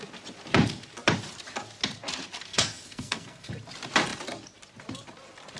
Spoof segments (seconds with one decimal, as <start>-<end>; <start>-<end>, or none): 2.5-3.5